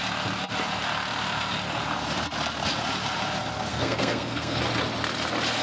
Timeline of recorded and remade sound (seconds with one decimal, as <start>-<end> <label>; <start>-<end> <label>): 0.0-3.7 recorded; 3.7-4.6 remade; 4.6-5.6 recorded